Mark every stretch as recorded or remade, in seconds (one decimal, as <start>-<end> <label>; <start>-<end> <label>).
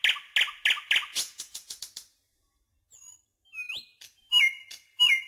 0.0-1.1 recorded; 1.1-1.8 remade; 1.8-5.3 recorded